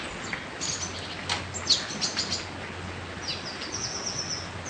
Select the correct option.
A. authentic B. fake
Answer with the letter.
A